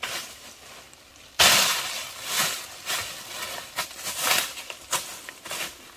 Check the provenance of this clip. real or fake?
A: real